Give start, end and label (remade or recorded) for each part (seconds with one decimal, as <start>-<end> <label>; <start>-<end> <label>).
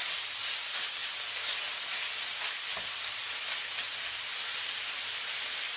0.0-5.8 recorded